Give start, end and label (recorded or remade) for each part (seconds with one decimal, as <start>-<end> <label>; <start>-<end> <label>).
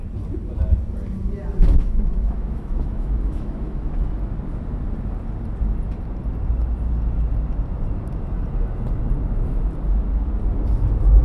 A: 0.0-1.6 recorded; 1.6-4.0 remade; 4.0-11.2 recorded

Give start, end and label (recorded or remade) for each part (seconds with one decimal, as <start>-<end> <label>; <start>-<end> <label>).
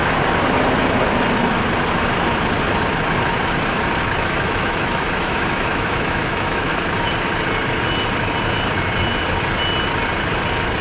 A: 0.0-4.0 recorded; 4.0-6.7 remade; 6.7-10.8 recorded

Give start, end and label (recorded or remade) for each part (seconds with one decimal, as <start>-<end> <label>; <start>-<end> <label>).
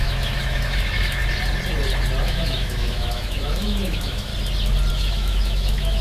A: 0.0-1.2 remade; 1.2-2.2 recorded; 2.2-4.3 remade; 4.3-4.9 recorded; 4.9-6.0 remade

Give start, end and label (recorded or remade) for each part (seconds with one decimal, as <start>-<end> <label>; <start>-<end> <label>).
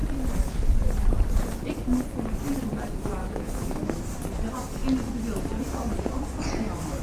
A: 0.0-3.2 recorded; 3.2-4.0 remade; 4.0-7.0 recorded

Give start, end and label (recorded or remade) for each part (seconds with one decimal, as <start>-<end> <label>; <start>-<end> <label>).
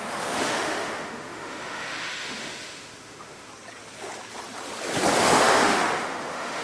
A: 0.0-3.5 remade; 3.5-5.3 recorded; 5.3-6.6 remade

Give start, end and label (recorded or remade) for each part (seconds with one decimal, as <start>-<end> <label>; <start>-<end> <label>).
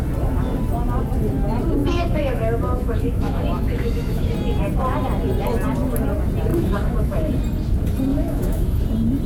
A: 0.0-1.8 recorded; 1.8-4.3 remade; 4.3-6.5 recorded; 6.5-7.3 remade; 7.3-8.1 recorded; 8.1-8.8 remade; 8.8-9.3 recorded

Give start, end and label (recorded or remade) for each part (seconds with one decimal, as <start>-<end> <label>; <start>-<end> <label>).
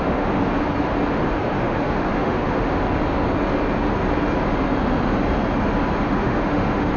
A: 0.0-0.4 remade; 0.4-1.1 recorded; 1.1-2.8 remade; 2.8-6.0 recorded; 6.0-7.0 remade